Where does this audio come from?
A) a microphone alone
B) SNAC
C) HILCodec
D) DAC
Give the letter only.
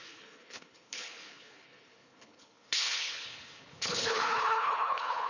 C